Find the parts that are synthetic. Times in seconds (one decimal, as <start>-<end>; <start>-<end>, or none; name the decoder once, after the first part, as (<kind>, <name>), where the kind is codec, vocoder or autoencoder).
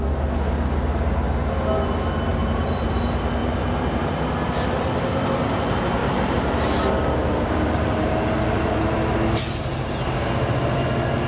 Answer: 2.3-3.0 (vocoder, BigVGAN v2); 3.4-4.2; 6.0-9.6